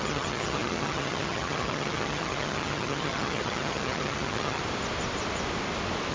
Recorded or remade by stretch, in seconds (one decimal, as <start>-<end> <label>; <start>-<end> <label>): 0.0-4.6 remade; 4.6-6.1 recorded